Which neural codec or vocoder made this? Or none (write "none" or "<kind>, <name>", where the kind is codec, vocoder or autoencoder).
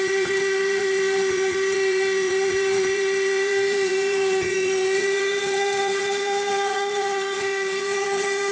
vocoder, Vocos